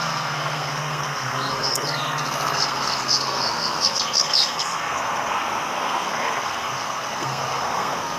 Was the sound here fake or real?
fake